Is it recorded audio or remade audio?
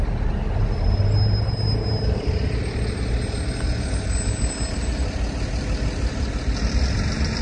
recorded